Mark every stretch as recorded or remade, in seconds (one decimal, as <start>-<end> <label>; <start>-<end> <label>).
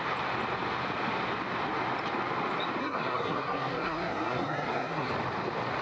0.0-2.8 recorded; 2.8-5.1 remade; 5.1-5.8 recorded